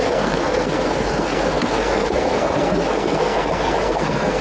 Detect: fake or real fake